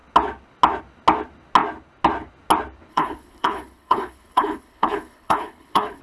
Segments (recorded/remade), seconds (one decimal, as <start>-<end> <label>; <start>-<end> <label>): 0.0-2.9 recorded; 2.9-6.0 remade